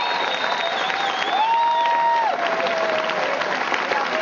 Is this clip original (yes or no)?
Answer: yes